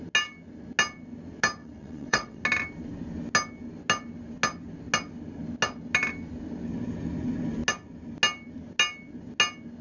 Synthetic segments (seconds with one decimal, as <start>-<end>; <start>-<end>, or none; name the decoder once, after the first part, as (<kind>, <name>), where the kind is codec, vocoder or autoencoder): 1.6-2.4 (vocoder, WaveNeXt)